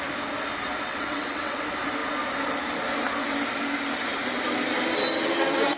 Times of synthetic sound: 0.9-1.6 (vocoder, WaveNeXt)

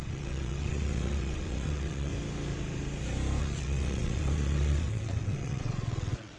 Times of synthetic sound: 0.0-2.1 (vocoder, WaveNeXt); 3.4-6.4

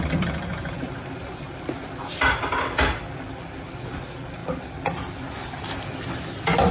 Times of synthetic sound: none

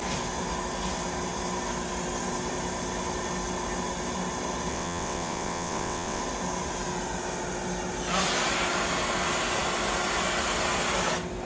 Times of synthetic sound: 4.7-6.2 (vocoder, WaveNeXt)